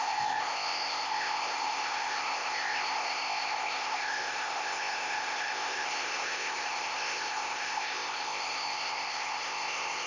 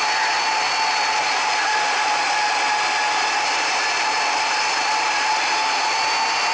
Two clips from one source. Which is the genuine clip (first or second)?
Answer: second